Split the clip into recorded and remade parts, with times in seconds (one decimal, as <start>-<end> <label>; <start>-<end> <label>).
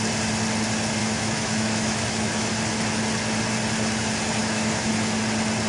0.0-1.0 recorded; 1.0-2.5 remade; 2.5-4.4 recorded; 4.4-4.9 remade; 4.9-5.7 recorded